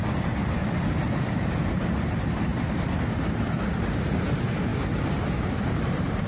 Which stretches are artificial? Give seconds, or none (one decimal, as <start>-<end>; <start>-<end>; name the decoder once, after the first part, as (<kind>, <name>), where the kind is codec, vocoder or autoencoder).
0.0-0.6 (vocoder, BigVGAN v2); 1.2-2.5; 4.0-4.7; 5.6-6.3